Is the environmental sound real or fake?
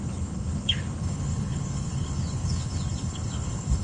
fake